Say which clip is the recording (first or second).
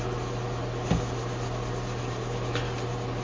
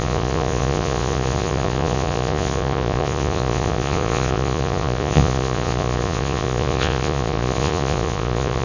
first